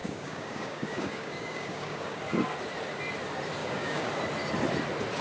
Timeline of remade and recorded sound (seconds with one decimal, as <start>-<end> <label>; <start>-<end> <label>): 0.0-2.2 remade; 2.2-3.6 recorded; 3.6-4.1 remade; 4.1-5.2 recorded